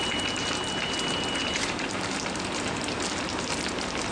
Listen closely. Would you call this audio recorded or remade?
remade